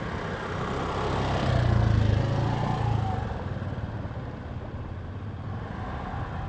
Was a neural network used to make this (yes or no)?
no